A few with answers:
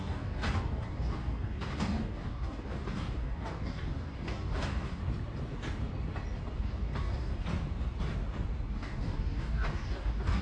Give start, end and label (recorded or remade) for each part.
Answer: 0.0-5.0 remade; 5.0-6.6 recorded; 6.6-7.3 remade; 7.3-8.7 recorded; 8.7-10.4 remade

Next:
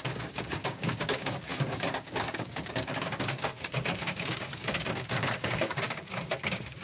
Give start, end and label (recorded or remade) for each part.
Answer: 0.0-6.8 remade

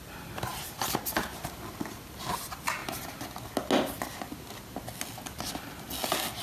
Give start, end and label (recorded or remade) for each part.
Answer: 0.0-6.4 recorded

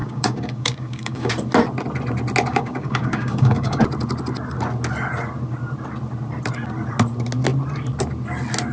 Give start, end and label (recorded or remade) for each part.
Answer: 0.0-1.3 remade; 1.3-2.5 recorded; 2.5-3.8 remade; 3.8-8.7 recorded

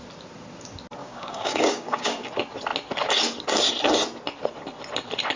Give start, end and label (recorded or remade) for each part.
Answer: 0.0-1.0 recorded; 1.0-2.3 remade; 2.3-5.4 recorded

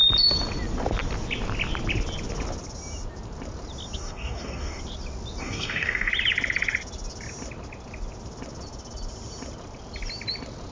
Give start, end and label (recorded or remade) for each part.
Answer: 0.0-4.0 recorded; 4.0-4.8 remade; 4.8-5.4 recorded; 5.4-6.1 remade; 6.1-10.7 recorded

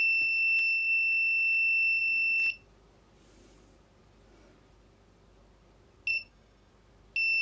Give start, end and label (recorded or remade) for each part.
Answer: 0.0-6.1 recorded; 6.1-6.7 remade; 6.7-7.4 recorded